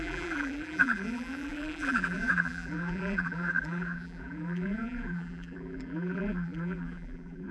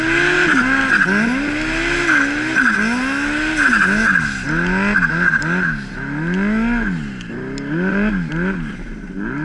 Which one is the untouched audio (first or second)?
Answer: second